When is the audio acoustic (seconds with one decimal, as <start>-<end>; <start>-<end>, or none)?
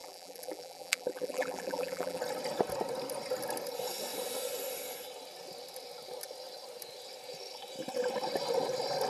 2.2-9.1